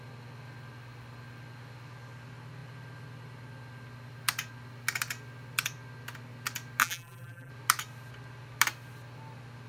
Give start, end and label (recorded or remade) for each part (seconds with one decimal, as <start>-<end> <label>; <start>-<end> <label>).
0.0-6.8 recorded; 6.8-7.5 remade; 7.5-9.7 recorded